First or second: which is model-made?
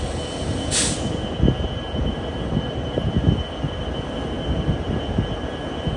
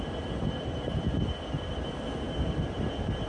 second